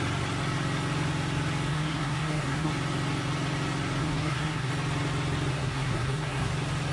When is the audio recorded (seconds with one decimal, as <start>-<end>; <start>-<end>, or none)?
0.0-1.7; 2.7-4.0; 4.7-5.5; 6.5-6.9